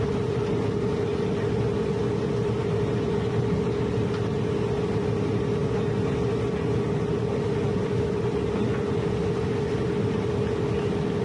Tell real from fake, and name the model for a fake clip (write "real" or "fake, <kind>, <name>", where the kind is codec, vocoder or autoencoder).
real